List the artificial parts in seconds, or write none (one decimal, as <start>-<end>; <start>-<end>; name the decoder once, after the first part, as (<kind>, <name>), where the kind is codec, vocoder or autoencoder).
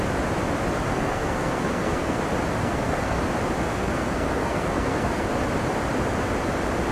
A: 0.9-2.2 (codec, SNAC); 2.6-3.2; 3.7-5.3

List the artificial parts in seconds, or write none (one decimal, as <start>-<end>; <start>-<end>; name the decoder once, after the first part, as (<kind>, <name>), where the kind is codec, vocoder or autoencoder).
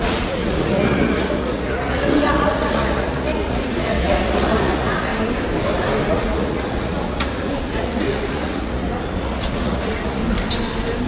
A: 0.0-5.1 (vocoder, Vocos); 6.1-10.2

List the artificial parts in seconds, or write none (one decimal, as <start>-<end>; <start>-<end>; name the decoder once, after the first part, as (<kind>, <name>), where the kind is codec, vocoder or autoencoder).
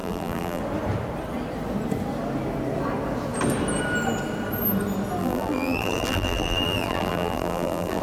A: 0.0-0.6 (vocoder, BigVGAN v2); 5.2-8.0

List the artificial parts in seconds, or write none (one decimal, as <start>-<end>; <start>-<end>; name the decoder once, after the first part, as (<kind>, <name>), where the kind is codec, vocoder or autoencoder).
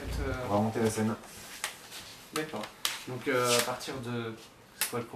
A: none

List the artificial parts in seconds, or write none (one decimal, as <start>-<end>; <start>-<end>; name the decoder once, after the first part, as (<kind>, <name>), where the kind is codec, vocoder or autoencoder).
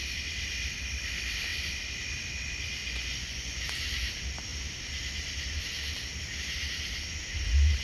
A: 2.8-3.6 (vocoder, Vocos)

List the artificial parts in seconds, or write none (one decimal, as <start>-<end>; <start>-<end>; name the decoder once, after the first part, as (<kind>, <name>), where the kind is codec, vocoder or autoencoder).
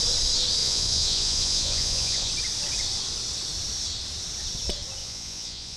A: 0.6-2.3 (vocoder, Vocos); 5.0-5.8